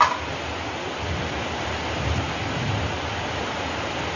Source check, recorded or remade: recorded